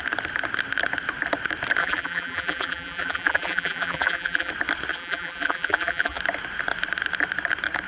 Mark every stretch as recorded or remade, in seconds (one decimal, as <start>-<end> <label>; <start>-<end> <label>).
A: 0.0-1.8 recorded; 1.8-4.5 remade; 4.5-4.9 recorded; 4.9-6.2 remade; 6.2-7.9 recorded